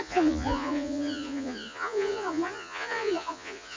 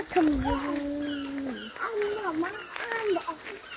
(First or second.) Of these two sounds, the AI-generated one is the first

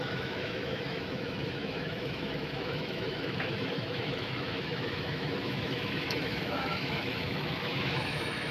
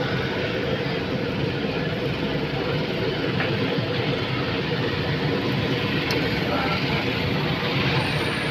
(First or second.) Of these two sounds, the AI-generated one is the first